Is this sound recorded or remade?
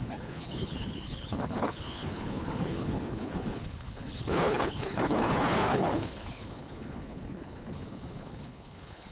remade